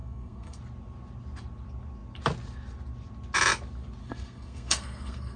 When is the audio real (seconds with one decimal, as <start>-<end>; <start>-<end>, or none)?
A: 0.6-4.0